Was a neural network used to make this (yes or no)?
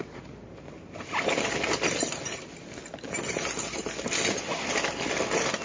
no